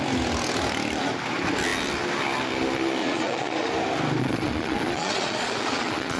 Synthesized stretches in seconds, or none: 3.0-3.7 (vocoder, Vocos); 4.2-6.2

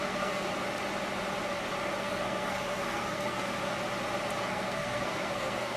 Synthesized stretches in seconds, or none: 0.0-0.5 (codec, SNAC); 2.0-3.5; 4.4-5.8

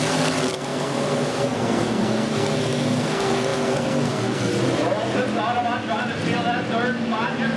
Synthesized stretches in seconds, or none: 0.0-4.5 (codec, SNAC)